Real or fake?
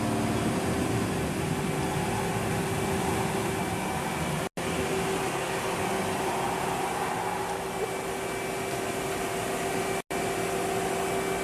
real